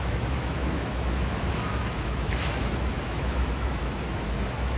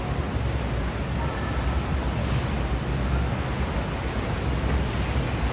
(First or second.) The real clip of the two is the second